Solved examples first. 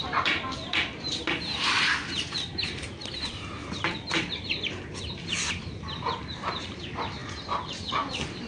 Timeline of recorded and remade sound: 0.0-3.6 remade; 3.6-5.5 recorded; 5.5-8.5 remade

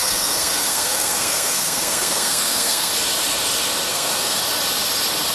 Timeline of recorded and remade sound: 0.0-2.9 remade; 2.9-3.9 recorded; 3.9-4.4 remade; 4.4-5.3 recorded

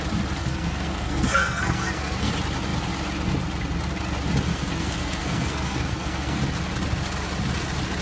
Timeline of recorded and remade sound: 0.0-0.4 recorded; 0.4-2.3 remade; 2.3-4.5 recorded; 4.5-6.4 remade; 6.4-8.0 recorded

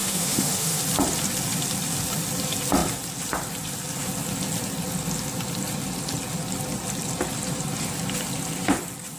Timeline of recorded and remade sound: 0.0-0.8 remade; 0.8-9.2 recorded

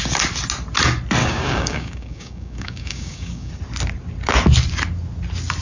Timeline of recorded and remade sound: 0.0-1.2 recorded; 1.2-3.5 remade; 3.5-5.6 recorded

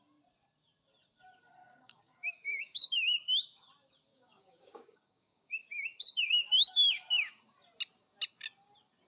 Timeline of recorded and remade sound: 0.0-1.6 recorded; 1.6-3.4 remade; 3.4-4.1 recorded; 4.1-7.4 remade; 7.4-9.1 recorded

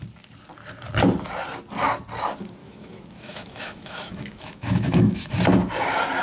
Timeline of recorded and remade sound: 0.0-2.6 recorded; 2.6-5.3 remade; 5.3-6.2 recorded